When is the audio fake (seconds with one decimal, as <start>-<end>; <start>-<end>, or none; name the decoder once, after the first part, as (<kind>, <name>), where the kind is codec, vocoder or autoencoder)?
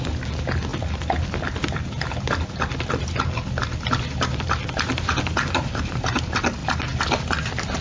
none